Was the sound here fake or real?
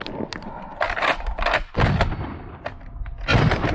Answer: real